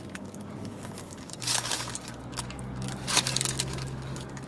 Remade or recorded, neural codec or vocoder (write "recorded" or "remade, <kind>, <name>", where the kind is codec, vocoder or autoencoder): remade, codec, DAC